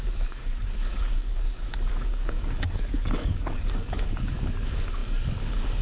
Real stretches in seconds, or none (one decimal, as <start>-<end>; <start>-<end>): none